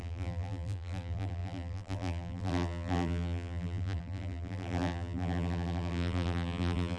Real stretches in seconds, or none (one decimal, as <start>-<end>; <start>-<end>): none